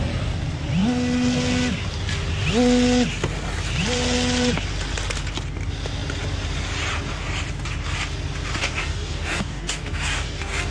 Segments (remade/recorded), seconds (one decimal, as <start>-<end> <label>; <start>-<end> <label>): 0.0-8.6 recorded; 8.6-10.7 remade